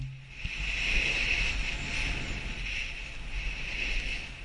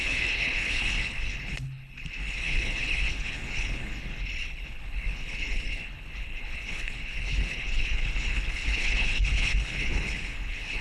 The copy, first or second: second